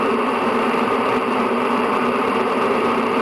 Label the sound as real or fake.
fake